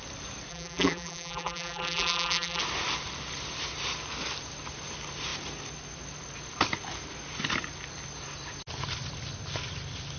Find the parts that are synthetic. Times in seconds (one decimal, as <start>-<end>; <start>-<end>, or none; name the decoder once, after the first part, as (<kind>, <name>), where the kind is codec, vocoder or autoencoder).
0.5-2.6 (vocoder, BigVGAN v2)